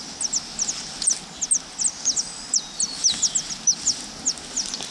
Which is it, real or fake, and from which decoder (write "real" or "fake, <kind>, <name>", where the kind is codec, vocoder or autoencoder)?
real